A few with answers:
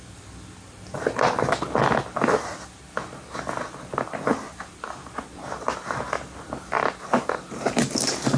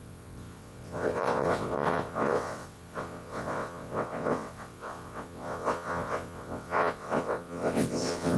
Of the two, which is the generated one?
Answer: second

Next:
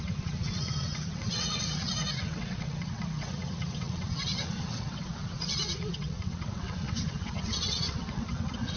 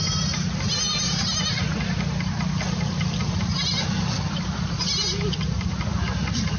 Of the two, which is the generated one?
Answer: first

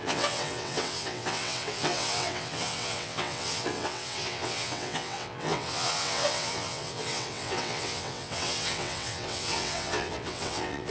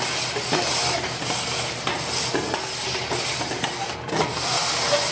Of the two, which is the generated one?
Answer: first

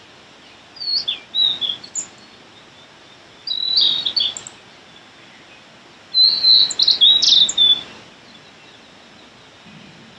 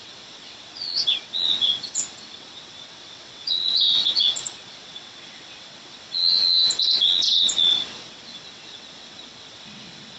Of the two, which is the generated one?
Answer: second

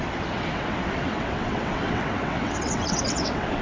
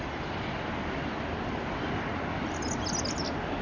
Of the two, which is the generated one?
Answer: first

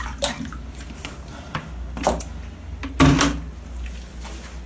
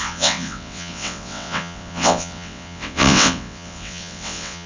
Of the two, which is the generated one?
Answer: second